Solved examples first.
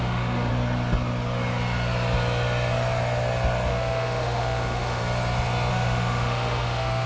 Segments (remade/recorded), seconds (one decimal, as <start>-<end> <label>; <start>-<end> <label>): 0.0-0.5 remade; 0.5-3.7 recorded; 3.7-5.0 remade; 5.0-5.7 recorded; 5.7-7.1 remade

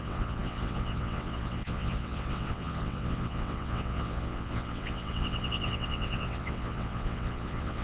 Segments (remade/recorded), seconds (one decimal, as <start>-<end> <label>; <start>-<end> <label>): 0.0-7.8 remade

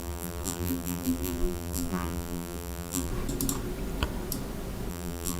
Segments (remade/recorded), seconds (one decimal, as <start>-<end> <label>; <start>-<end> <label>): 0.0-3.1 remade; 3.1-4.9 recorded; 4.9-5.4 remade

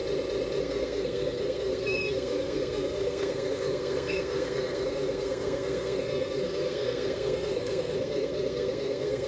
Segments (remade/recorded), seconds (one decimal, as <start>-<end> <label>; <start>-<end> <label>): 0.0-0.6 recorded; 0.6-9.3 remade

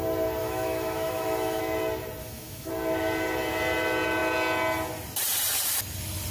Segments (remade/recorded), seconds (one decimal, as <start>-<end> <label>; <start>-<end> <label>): 0.0-0.4 recorded; 0.4-1.6 remade; 1.6-2.2 recorded; 2.2-2.7 remade; 2.7-6.3 recorded